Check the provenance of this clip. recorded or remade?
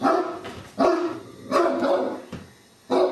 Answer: recorded